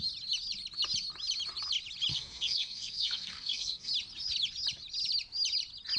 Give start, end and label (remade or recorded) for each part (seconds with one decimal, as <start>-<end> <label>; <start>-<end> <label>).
0.0-2.1 recorded; 2.1-3.9 remade; 3.9-6.0 recorded